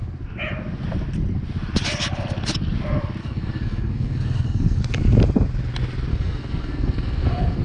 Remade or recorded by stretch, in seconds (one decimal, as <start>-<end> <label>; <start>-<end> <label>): 0.0-3.2 recorded; 3.2-4.8 remade; 4.8-6.1 recorded; 6.1-7.6 remade

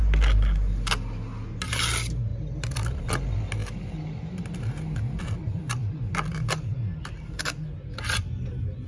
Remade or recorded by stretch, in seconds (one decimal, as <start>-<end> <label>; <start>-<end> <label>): 0.0-8.9 recorded

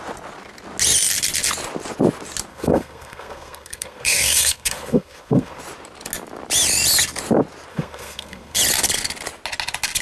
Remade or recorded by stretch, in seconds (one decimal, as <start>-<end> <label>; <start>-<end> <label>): 0.0-2.5 recorded; 2.5-5.6 remade; 5.6-7.7 recorded; 7.7-8.6 remade; 8.6-10.0 recorded

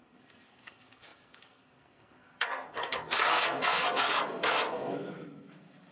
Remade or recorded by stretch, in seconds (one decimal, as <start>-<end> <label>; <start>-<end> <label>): 0.0-5.9 remade

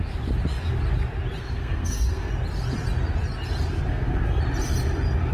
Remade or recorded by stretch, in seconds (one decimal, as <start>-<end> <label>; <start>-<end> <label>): 0.0-1.6 recorded; 1.6-2.3 remade; 2.3-3.9 recorded; 3.9-4.4 remade; 4.4-5.3 recorded

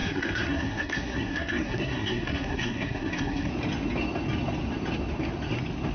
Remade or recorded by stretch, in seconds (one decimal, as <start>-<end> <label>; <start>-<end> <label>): 0.0-3.5 remade; 3.5-5.9 recorded

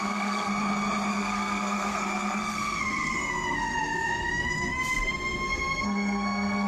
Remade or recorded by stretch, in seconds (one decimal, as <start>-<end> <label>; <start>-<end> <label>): 0.0-0.5 remade; 0.5-1.1 recorded; 1.1-6.7 remade

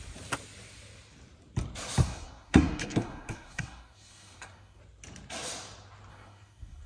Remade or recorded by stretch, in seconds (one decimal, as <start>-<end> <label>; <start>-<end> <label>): 0.0-2.0 recorded; 2.0-4.8 remade; 4.8-6.1 recorded; 6.1-6.9 remade